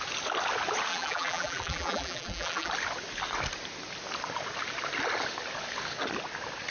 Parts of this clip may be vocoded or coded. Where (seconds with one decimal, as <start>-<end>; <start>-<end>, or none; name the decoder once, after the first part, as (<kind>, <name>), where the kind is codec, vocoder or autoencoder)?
0.9-2.7 (vocoder, BigVGAN v2)